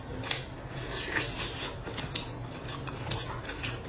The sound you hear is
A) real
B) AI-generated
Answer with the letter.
A